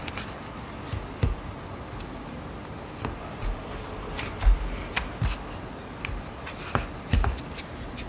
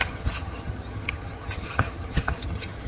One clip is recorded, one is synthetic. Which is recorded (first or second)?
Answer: first